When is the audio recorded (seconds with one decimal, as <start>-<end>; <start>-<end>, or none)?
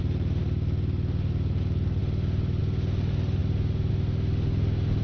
0.0-5.0